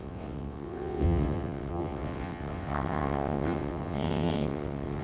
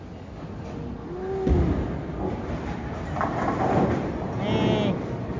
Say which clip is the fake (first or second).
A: first